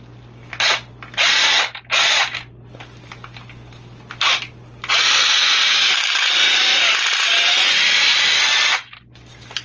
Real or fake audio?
real